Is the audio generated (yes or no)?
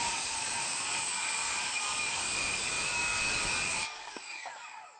yes